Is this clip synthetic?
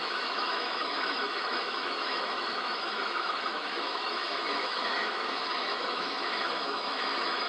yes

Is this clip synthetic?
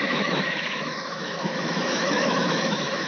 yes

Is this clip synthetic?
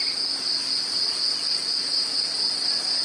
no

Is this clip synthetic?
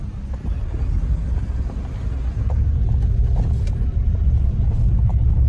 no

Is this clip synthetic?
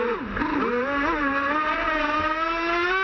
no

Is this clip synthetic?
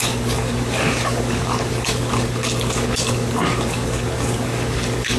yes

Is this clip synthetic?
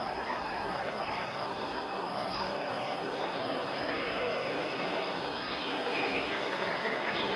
yes